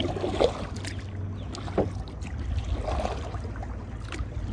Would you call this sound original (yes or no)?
yes